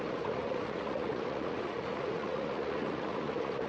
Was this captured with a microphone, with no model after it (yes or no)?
no